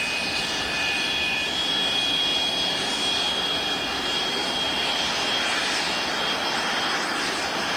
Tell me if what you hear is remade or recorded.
recorded